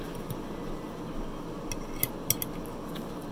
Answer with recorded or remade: recorded